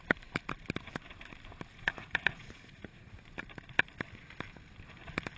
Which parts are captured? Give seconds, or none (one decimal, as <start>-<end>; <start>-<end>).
0.0-1.7; 3.2-5.4